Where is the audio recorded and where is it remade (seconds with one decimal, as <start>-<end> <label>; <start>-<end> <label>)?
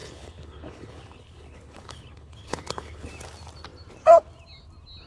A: 0.0-3.1 remade; 3.1-5.1 recorded